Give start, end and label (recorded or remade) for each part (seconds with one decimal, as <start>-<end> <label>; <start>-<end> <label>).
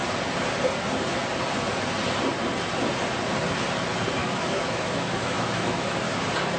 0.0-4.2 recorded; 4.2-6.1 remade; 6.1-6.6 recorded